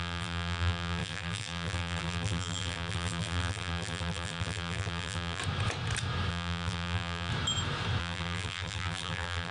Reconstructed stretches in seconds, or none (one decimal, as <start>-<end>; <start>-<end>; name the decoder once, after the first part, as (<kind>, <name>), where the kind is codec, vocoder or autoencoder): 0.0-5.4 (vocoder, BigVGAN v2); 6.3-7.3; 8.0-9.5